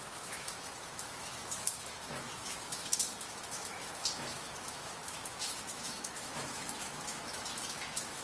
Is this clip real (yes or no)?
no